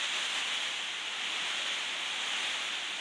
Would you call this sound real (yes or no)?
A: yes